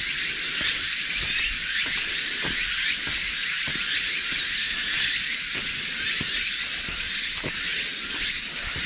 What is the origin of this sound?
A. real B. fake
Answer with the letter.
A